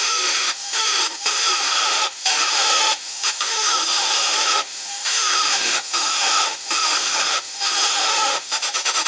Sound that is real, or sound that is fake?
fake